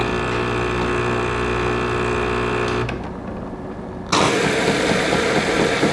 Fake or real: real